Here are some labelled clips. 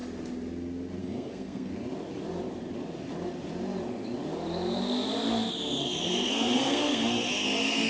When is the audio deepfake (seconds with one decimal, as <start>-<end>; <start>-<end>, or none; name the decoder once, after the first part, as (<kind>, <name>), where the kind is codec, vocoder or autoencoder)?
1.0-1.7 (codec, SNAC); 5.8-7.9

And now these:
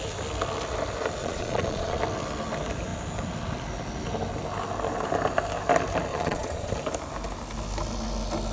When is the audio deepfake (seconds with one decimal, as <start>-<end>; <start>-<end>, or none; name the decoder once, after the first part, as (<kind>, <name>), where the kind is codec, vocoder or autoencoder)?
1.2-2.0 (vocoder, Vocos); 6.1-6.7

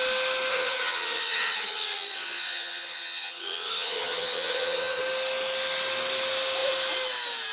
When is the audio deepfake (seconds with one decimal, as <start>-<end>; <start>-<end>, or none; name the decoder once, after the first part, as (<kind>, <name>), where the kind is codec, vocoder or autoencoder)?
0.5-5.0 (vocoder, HiFi-GAN)

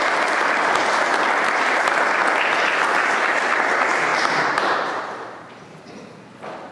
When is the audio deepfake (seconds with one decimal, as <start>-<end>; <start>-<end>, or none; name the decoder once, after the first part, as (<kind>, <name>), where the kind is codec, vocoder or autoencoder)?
4.1-5.9 (vocoder, BigVGAN v2)